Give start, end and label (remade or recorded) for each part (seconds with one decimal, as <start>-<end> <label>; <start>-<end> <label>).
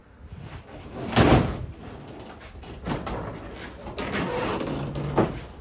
0.0-5.6 recorded